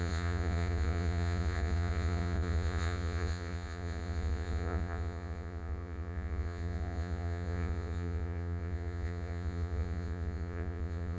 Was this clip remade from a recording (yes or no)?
yes